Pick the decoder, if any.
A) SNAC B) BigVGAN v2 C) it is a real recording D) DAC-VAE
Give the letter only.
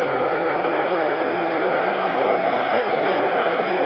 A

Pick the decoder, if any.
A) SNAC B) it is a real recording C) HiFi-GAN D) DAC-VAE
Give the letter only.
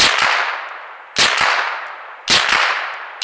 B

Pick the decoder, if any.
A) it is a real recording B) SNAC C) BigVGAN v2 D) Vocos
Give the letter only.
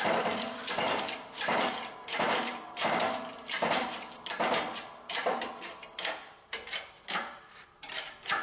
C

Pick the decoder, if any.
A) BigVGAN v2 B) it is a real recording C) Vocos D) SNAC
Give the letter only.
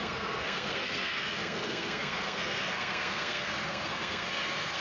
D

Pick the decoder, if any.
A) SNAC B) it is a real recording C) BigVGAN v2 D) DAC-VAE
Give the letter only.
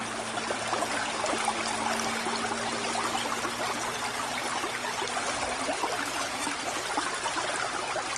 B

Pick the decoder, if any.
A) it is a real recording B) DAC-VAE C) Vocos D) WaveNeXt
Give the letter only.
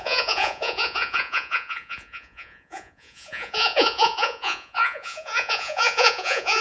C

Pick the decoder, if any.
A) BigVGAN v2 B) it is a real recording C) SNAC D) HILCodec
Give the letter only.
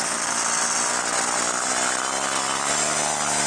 B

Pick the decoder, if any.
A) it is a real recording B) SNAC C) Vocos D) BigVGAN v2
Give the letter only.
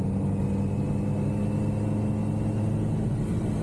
A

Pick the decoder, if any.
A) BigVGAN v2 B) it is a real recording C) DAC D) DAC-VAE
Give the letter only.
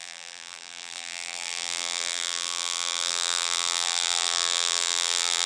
A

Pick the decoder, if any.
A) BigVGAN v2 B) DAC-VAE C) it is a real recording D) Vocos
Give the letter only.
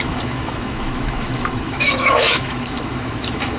B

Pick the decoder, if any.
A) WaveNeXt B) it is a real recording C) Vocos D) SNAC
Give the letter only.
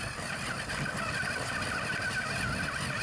B